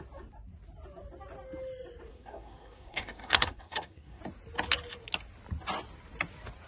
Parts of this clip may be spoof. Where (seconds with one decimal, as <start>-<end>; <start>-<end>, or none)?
2.1-4.2